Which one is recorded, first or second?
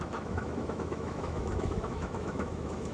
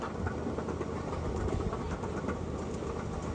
second